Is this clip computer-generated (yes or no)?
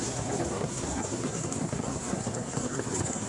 yes